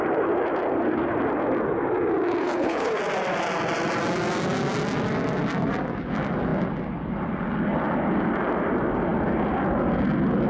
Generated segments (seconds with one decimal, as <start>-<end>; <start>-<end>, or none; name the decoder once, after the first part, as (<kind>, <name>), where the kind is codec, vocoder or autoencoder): 2.4-3.0 (codec, HILCodec)